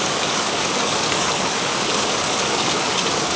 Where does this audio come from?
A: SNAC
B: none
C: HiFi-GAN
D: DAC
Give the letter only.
D